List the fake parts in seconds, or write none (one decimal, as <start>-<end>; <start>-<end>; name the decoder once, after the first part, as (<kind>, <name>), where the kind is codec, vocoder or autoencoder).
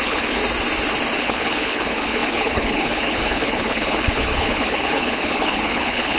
0.0-0.4 (codec, HILCodec); 1.2-6.2